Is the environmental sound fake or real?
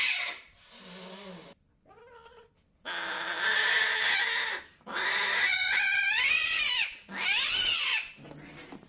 real